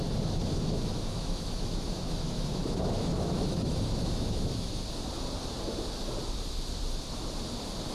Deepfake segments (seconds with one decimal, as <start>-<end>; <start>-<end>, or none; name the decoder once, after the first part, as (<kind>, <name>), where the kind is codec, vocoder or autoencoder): 0.5-4.7 (autoencoder, DAC-VAE)